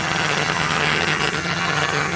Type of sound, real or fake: fake